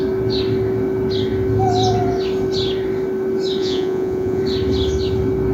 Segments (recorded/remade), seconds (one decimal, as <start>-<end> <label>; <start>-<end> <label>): 0.0-3.6 recorded; 3.6-4.4 remade; 4.4-5.5 recorded